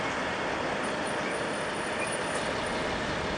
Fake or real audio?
real